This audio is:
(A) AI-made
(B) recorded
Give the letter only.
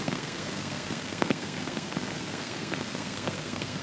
A